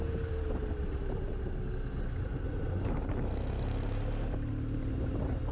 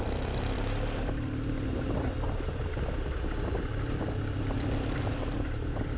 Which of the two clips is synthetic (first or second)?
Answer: second